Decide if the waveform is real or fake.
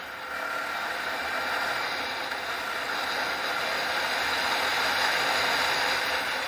real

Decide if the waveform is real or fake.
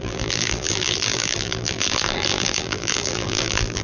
fake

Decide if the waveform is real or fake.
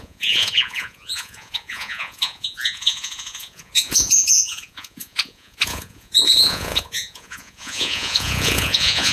fake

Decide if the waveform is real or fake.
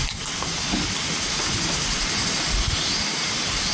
real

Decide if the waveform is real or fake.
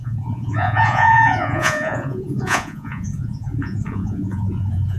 fake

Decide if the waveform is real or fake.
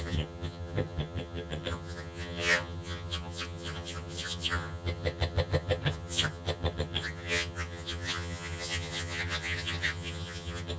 fake